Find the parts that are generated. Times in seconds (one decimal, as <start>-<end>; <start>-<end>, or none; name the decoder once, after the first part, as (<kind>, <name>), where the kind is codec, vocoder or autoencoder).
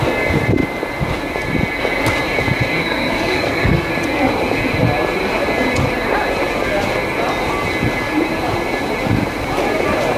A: 2.8-3.9 (codec, SNAC)